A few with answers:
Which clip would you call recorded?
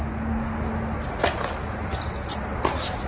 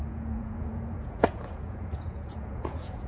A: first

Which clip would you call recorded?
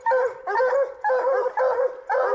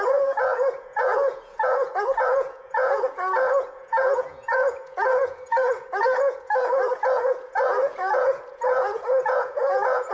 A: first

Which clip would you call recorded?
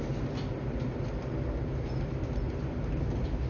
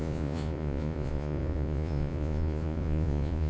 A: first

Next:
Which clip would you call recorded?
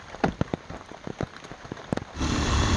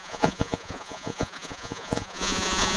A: first